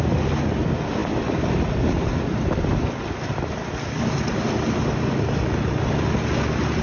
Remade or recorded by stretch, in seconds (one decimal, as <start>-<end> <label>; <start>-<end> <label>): 0.0-1.0 recorded; 1.0-4.8 remade; 4.8-6.8 recorded